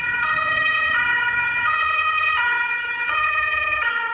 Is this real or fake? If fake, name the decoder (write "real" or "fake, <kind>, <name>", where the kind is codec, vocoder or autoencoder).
fake, vocoder, HiFi-GAN